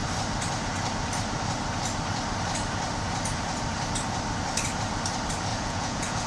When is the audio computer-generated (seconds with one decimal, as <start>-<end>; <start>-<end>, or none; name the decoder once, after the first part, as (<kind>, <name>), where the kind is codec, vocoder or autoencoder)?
5.5-6.3 (vocoder, Vocos)